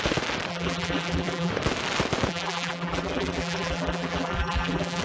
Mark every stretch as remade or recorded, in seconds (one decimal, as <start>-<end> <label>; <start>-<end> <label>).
0.0-0.5 recorded; 0.5-1.5 remade; 1.5-2.3 recorded; 2.3-5.0 remade